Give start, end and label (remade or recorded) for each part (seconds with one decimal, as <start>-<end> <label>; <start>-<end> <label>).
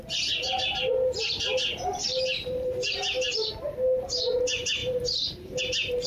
0.0-2.0 recorded; 2.0-3.5 remade; 3.5-4.8 recorded; 4.8-5.6 remade; 5.6-6.1 recorded